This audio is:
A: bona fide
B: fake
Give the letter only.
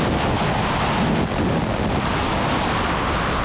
A